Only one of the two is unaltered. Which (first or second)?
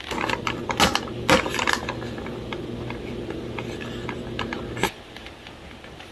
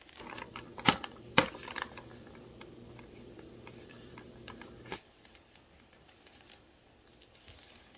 first